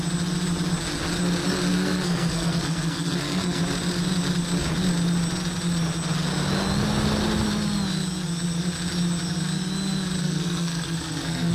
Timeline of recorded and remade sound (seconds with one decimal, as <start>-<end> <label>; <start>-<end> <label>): 0.0-1.7 recorded; 1.7-3.6 remade; 3.6-10.2 recorded; 10.2-11.5 remade